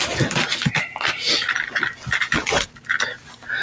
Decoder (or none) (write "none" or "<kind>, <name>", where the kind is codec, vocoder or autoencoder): none